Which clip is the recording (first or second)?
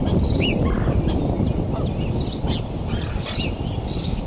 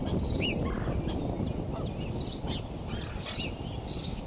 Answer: second